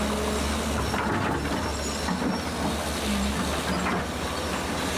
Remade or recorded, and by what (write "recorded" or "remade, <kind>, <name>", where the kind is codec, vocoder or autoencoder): recorded